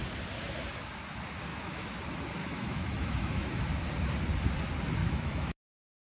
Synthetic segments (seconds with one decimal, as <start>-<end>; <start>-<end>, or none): 1.5-2.0; 2.4-3.6; 5.0-6.1